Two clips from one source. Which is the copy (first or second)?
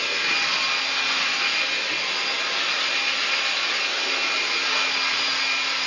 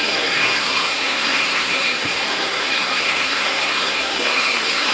second